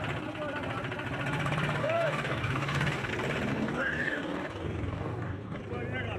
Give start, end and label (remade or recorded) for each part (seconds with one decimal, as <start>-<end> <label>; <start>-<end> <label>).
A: 0.0-1.8 recorded; 1.8-3.1 remade; 3.1-3.5 recorded; 3.5-5.6 remade; 5.6-6.2 recorded